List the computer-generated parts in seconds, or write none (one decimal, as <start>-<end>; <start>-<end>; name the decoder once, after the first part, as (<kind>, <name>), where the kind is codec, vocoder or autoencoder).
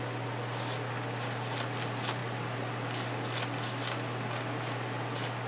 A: none